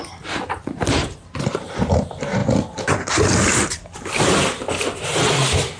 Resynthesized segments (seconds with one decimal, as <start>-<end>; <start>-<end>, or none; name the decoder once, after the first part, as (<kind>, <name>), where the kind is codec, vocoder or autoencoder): none